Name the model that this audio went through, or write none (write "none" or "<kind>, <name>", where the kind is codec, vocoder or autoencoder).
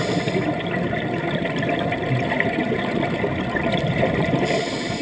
none